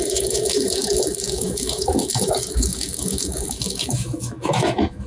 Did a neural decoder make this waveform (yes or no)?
yes